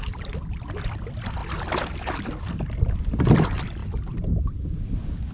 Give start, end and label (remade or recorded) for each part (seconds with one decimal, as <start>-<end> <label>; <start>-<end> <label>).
0.0-5.3 recorded

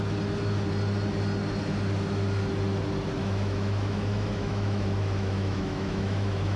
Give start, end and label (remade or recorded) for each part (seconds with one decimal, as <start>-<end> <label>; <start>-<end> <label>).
0.0-3.2 recorded; 3.2-6.6 remade

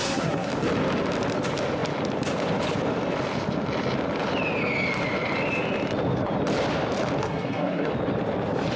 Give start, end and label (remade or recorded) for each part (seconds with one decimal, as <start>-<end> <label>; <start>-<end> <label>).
0.0-0.5 remade; 0.5-7.2 recorded; 7.2-7.9 remade; 7.9-8.8 recorded

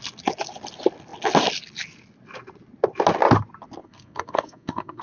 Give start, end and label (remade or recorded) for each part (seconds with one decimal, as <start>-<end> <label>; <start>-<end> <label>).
0.0-3.8 recorded; 3.8-5.0 remade

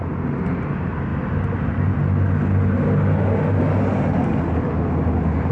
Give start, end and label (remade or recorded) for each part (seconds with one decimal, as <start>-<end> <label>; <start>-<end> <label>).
0.0-5.5 recorded

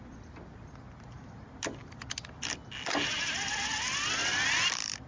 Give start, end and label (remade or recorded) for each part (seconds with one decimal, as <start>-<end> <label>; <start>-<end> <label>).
0.0-5.1 recorded